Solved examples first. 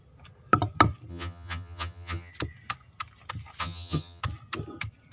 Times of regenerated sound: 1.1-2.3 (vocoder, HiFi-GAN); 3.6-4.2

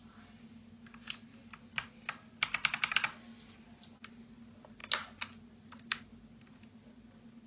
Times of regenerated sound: none